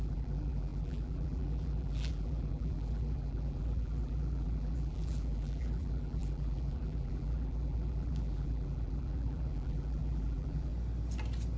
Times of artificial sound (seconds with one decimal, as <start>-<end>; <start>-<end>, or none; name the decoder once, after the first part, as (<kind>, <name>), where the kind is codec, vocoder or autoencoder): 0.0-10.7 (vocoder, BigVGAN v2)